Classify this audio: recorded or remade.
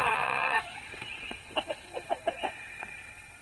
remade